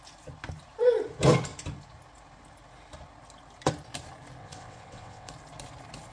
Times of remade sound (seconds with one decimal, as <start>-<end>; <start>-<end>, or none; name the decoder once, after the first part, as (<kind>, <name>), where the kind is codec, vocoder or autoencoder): 4.4-5.3 (vocoder, WaveNeXt)

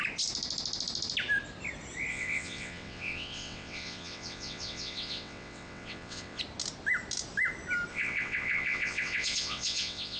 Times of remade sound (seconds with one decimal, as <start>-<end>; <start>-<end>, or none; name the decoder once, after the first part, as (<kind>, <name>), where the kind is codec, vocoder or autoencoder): 2.1-6.4 (vocoder, WaveNeXt); 7.9-10.2

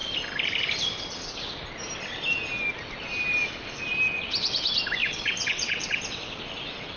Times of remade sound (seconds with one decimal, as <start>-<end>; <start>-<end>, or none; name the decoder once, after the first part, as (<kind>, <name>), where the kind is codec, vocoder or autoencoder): 5.0-6.0 (vocoder, WaveNeXt)

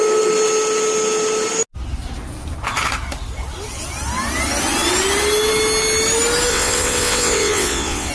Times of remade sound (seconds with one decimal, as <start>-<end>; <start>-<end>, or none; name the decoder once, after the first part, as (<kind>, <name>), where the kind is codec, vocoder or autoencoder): 6.5-8.1 (vocoder, WaveNeXt)

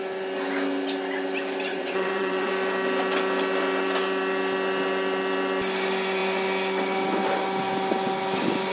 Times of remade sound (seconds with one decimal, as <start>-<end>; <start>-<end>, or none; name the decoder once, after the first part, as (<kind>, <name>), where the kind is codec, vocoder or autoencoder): 1.7-2.5 (vocoder, WaveNeXt)